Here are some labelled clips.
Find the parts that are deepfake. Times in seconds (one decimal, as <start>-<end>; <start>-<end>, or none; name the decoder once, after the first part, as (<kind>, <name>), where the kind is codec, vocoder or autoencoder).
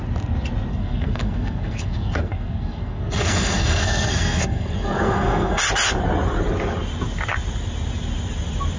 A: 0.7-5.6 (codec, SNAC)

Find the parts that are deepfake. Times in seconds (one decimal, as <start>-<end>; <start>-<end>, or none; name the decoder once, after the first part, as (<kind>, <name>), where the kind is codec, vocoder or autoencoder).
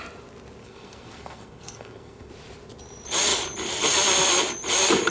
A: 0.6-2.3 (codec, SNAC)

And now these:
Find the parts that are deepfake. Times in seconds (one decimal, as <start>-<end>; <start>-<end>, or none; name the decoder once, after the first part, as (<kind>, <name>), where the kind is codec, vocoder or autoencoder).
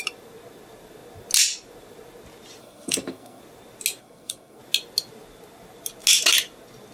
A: 2.6-3.4 (codec, SNAC); 4.0-4.6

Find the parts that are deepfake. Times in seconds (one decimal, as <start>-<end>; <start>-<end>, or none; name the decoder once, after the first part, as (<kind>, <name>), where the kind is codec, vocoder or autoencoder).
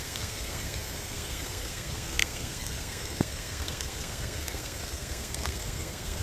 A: 0.0-6.2 (codec, SNAC)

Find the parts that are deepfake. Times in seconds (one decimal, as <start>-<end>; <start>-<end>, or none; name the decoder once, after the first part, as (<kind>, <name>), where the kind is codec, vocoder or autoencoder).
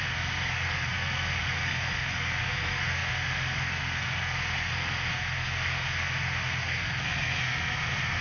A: 0.0-8.2 (codec, SNAC)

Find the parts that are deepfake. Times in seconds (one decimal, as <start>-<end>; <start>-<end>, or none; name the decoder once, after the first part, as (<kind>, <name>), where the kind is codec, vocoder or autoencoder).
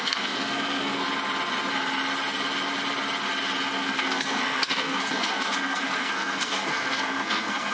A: 0.0-1.0 (codec, SNAC); 3.8-7.7